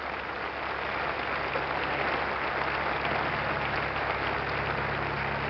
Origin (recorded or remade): recorded